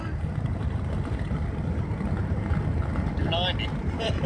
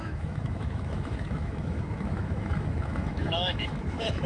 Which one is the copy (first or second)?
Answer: second